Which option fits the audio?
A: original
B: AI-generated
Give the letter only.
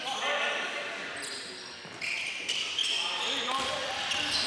A